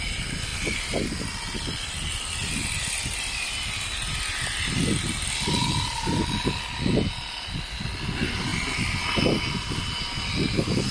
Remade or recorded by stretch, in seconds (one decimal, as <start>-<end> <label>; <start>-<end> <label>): 0.0-10.9 recorded